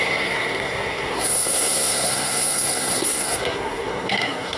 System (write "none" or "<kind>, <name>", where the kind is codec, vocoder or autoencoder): codec, SNAC